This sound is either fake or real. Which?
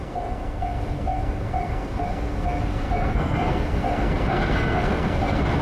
fake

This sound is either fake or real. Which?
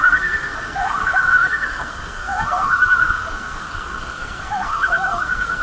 fake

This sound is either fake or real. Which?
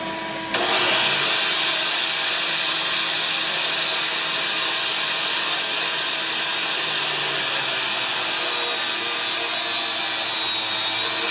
real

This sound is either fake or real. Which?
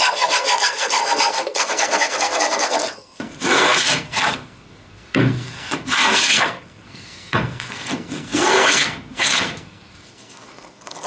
fake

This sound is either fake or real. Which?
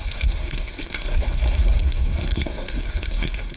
fake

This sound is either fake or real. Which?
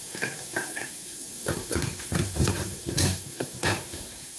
fake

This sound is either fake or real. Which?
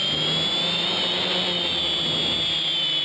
real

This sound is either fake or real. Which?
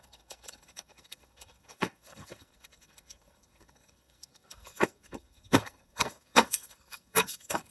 fake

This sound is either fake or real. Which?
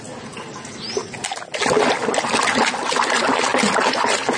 real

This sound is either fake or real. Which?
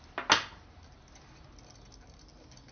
real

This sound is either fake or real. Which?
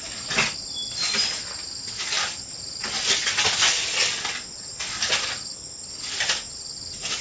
real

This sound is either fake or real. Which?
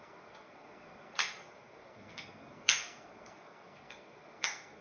fake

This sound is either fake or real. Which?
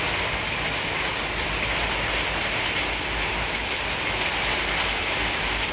real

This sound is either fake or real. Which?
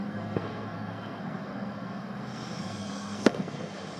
fake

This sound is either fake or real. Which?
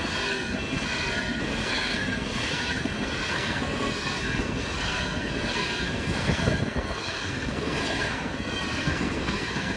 fake